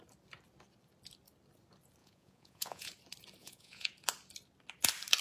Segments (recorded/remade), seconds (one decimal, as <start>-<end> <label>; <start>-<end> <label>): 0.0-2.0 recorded; 2.0-2.9 remade; 2.9-3.4 recorded; 3.4-3.9 remade; 3.9-5.2 recorded

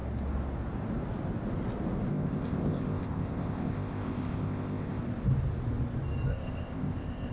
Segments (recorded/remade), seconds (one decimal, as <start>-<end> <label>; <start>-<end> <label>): 0.0-2.1 recorded; 2.1-5.0 remade; 5.0-6.3 recorded; 6.3-7.3 remade

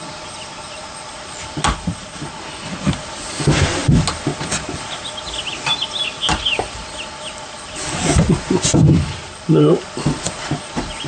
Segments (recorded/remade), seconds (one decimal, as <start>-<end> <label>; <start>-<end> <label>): 0.0-11.1 recorded

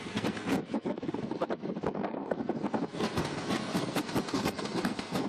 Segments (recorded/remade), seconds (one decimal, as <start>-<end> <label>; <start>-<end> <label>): 0.0-5.3 remade